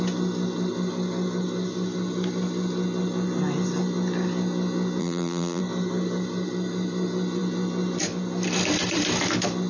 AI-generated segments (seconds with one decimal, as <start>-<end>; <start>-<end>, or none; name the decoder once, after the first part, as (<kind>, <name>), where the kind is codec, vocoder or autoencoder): 5.0-5.6 (vocoder, BigVGAN v2)